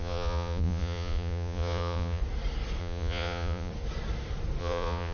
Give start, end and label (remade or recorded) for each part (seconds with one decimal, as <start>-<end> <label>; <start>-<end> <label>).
0.0-2.2 remade; 2.2-2.8 recorded; 2.8-3.7 remade; 3.7-4.6 recorded; 4.6-5.1 remade